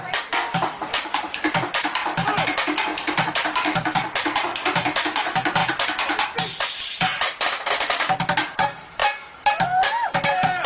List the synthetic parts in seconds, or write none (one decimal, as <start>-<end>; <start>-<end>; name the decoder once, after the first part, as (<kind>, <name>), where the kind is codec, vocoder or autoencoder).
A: 0.0-5.6 (vocoder, BigVGAN v2); 7.7-9.0; 9.5-10.7